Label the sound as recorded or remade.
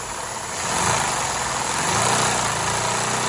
recorded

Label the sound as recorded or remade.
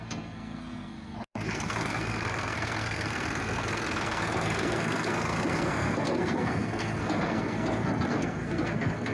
remade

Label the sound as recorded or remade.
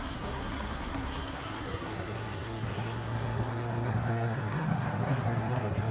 remade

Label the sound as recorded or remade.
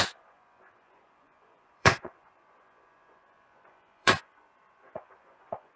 remade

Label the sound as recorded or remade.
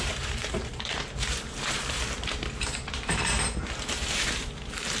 remade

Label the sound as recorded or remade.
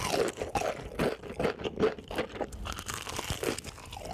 recorded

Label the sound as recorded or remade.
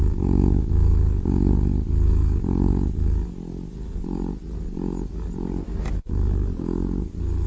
recorded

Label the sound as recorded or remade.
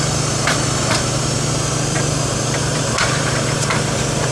remade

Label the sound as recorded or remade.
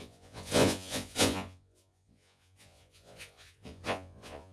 remade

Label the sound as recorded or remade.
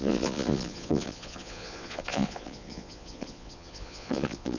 remade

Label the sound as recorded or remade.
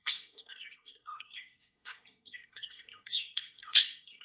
remade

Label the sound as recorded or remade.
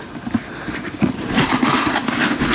recorded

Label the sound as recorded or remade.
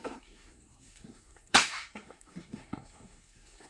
remade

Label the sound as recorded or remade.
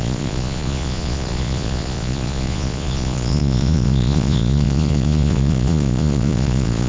remade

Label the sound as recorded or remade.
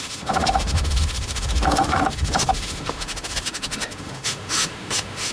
remade